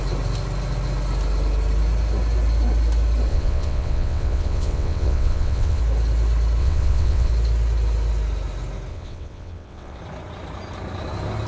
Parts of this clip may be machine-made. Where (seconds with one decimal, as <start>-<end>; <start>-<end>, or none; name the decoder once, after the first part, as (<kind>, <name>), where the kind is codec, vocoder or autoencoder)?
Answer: 3.3-5.8 (vocoder, WaveNeXt); 6.6-7.3; 8.9-10.0